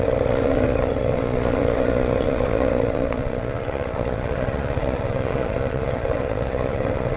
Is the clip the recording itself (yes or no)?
no